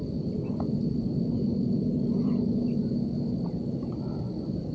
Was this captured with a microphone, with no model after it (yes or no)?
no